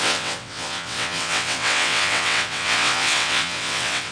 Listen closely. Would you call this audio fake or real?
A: fake